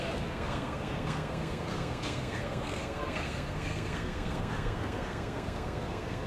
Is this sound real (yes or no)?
no